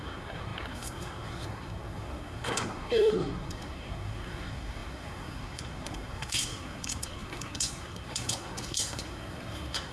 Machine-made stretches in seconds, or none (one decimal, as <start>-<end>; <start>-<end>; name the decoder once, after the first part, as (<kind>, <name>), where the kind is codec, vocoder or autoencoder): 0.0-9.9 (codec, SNAC)